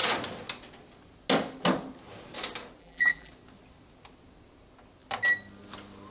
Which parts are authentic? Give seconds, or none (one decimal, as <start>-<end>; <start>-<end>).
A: 0.0-2.8; 3.3-6.1